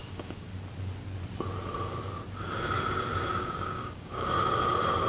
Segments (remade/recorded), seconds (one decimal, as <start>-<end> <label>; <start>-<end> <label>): 0.0-0.5 remade; 0.5-3.4 recorded; 3.4-4.4 remade; 4.4-5.1 recorded

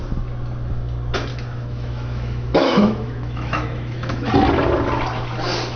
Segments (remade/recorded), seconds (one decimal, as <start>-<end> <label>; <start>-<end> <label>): 0.0-1.3 recorded; 1.3-4.3 remade; 4.3-5.8 recorded

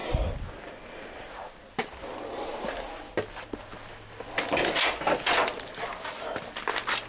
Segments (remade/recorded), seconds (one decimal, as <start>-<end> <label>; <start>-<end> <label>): 0.0-7.1 recorded

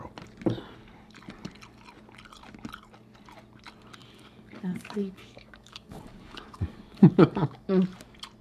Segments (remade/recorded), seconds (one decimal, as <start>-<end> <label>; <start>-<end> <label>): 0.0-4.0 recorded; 4.0-7.7 remade; 7.7-8.4 recorded

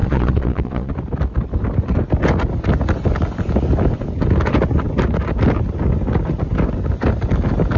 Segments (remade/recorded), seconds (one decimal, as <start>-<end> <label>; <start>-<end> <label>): 0.0-0.9 remade; 0.9-7.8 recorded

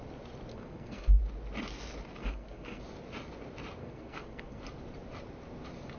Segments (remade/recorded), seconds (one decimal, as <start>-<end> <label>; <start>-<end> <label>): 0.0-0.5 recorded; 0.5-1.2 remade; 1.2-2.2 recorded; 2.2-2.8 remade; 2.8-3.8 recorded; 3.8-4.6 remade; 4.6-6.0 recorded

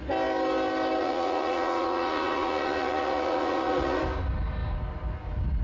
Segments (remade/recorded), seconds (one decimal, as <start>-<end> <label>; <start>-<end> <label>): 0.0-1.0 recorded; 1.0-4.0 remade; 4.0-5.6 recorded